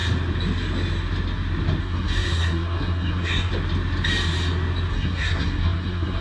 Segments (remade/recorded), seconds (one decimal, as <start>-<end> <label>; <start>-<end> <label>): 0.0-1.8 recorded; 1.8-3.5 remade; 3.5-4.9 recorded; 4.9-6.2 remade